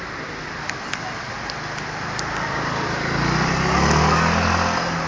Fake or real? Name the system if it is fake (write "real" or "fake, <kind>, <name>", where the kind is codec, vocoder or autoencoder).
real